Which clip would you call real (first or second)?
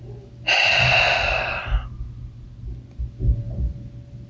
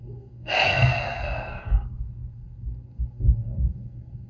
first